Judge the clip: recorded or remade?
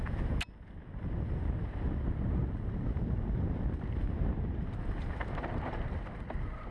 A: recorded